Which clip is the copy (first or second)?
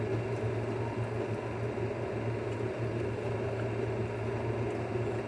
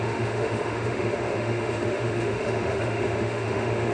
second